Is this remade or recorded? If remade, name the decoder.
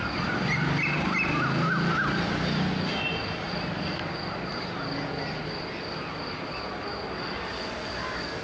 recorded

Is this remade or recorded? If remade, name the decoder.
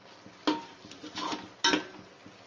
recorded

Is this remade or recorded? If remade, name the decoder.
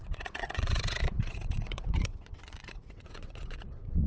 remade, vocoder, WaveNeXt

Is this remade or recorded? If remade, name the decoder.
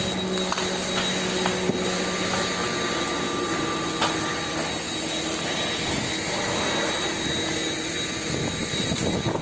recorded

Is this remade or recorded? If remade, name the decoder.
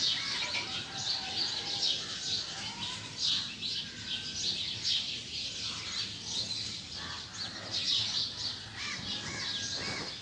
recorded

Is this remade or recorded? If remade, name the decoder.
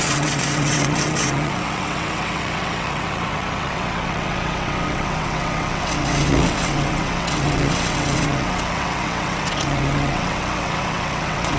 remade, vocoder, WaveNeXt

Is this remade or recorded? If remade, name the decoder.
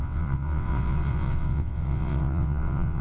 remade, vocoder, WaveNeXt